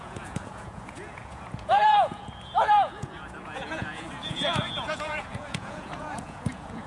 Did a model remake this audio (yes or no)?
yes